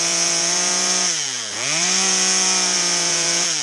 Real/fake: fake